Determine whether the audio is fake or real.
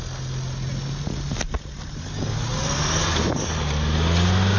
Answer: real